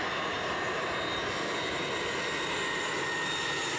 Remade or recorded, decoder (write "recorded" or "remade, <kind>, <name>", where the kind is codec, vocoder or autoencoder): recorded